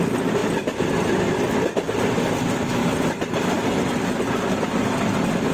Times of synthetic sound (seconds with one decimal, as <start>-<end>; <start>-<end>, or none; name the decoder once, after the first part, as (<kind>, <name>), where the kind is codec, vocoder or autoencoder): 2.8-4.2 (vocoder, BigVGAN v2)